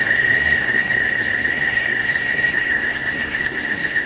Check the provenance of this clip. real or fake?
fake